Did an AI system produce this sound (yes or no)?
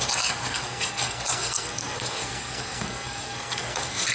yes